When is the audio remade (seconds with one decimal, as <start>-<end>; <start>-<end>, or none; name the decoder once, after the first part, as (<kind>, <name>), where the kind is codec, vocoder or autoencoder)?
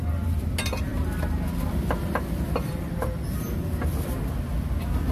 none